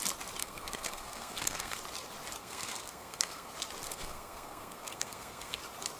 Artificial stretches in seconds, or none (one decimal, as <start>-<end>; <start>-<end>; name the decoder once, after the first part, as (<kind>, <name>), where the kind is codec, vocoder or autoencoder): 0.4-1.8 (codec, SNAC); 2.4-3.5; 3.9-5.6